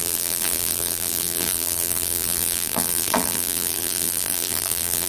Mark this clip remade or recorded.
remade